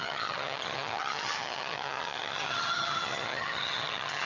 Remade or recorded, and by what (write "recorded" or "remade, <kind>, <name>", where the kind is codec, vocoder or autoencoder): remade, vocoder, HiFi-GAN